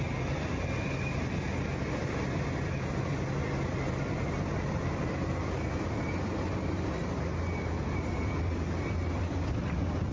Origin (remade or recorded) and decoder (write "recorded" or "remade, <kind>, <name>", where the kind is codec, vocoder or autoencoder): recorded